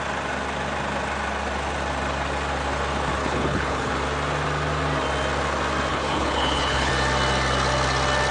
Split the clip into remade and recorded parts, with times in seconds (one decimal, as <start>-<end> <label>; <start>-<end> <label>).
0.0-3.2 recorded; 3.2-3.9 remade; 3.9-5.9 recorded; 5.9-6.9 remade; 6.9-8.3 recorded